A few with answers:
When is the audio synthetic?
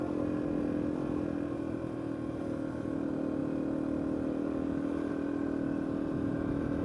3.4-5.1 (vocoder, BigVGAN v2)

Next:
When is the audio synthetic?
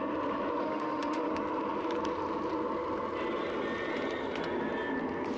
0.6-1.3 (autoencoder, DAC-VAE)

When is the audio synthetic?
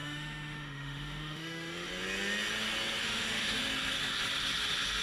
0.0-1.9 (autoencoder, DAC-VAE); 3.0-3.6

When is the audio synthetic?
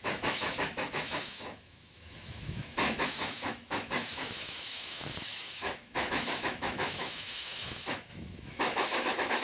0.0-9.4 (autoencoder, DAC-VAE)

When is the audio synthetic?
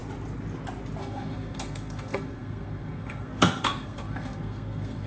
1.0-5.1 (codec, SNAC)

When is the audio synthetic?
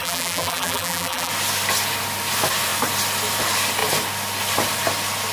0.0-1.3 (vocoder, BigVGAN v2)